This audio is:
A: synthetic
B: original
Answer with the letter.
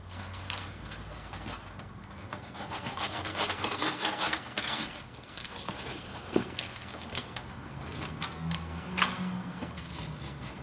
A